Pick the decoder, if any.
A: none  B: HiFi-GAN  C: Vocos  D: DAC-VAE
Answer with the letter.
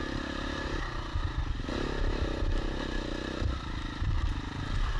A